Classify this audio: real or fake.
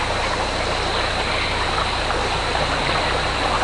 real